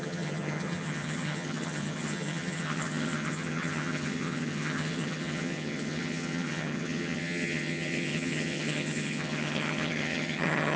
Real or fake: fake